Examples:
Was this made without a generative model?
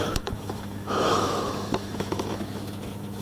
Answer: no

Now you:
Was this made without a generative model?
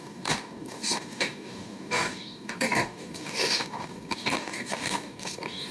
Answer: no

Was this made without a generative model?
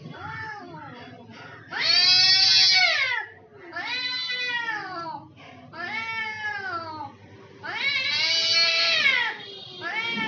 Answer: yes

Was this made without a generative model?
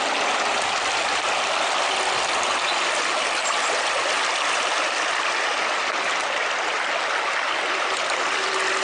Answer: yes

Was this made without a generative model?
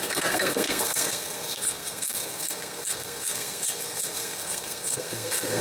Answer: no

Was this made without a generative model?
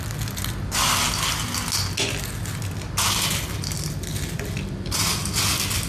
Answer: yes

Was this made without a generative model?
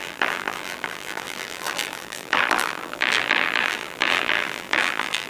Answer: no